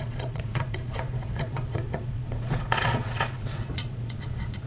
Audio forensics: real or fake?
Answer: fake